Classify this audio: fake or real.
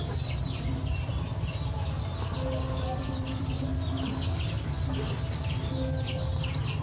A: real